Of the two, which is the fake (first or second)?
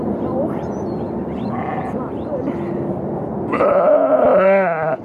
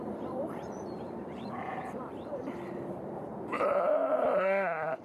second